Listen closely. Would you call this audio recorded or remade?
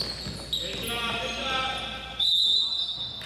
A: recorded